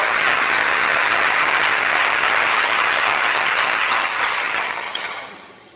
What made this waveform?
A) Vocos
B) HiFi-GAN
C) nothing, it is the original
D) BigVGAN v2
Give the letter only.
B